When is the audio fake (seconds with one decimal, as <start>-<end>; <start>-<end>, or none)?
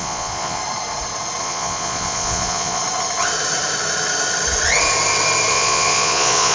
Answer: 0.0-0.6; 1.4-2.8; 5.5-6.5